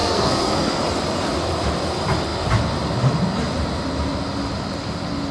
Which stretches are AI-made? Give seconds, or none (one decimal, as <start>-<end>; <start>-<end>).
0.0-0.8